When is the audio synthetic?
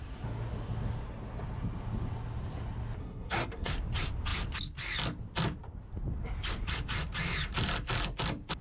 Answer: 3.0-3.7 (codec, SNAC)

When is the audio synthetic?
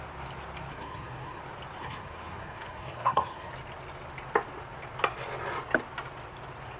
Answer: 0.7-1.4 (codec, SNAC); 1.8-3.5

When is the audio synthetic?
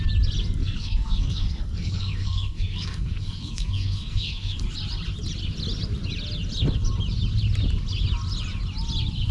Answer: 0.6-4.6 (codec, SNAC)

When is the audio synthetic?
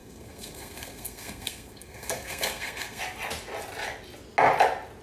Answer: 0.0-3.0 (codec, SNAC)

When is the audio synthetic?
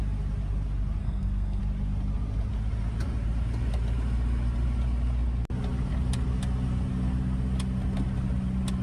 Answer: 1.0-1.6 (codec, SNAC)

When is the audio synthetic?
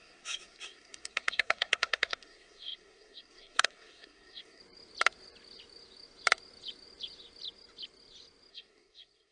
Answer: 0.0-4.6 (codec, SNAC); 8.5-9.3